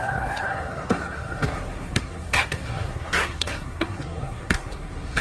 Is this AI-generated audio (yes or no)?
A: yes